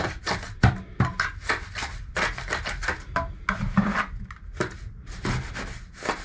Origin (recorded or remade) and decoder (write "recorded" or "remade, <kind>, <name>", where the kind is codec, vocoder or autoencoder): recorded